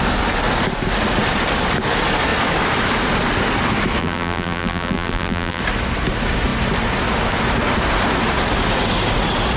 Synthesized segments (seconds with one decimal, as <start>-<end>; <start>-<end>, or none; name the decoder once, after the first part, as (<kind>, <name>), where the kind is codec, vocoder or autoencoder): 4.0-5.6 (vocoder, BigVGAN v2)